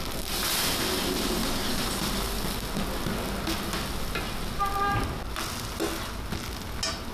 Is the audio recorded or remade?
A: recorded